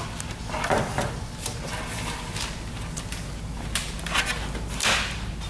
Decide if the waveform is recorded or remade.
recorded